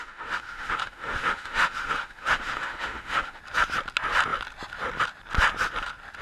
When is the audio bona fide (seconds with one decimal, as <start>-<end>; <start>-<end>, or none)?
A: 3.4-6.2